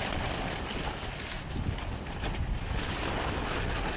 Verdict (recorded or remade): recorded